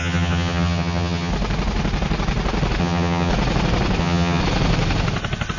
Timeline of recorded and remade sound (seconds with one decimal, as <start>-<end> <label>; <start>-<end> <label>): 0.0-1.3 remade; 1.3-2.8 recorded; 2.8-3.3 remade; 3.3-4.0 recorded; 4.0-4.4 remade; 4.4-5.6 recorded